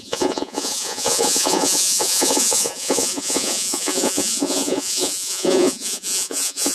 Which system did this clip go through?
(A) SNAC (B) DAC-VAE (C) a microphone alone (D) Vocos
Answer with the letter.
D